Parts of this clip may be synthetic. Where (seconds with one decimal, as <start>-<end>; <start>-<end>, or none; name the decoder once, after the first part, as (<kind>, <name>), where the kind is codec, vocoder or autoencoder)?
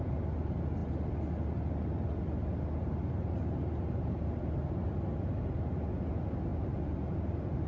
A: 2.8-4.4 (vocoder, BigVGAN v2)